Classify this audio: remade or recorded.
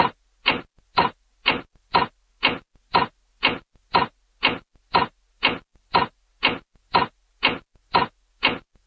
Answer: recorded